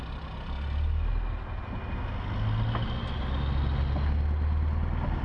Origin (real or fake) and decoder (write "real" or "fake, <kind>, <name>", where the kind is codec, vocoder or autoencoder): real